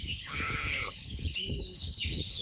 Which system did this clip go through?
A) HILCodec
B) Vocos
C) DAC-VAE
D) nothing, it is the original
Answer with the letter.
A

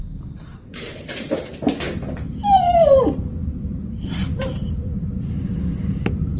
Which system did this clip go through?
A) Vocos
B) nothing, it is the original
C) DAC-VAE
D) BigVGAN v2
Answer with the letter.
D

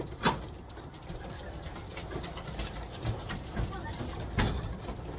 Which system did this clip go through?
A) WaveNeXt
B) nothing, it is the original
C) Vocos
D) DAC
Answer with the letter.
B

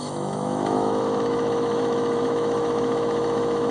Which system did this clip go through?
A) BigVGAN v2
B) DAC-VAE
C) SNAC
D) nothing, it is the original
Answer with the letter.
B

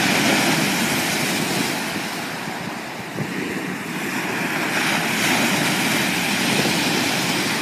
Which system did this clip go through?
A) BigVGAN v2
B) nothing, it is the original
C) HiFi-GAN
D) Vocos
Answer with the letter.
B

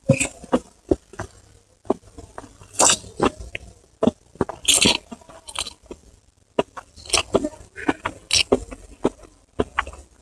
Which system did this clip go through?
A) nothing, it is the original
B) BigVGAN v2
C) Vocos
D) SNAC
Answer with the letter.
A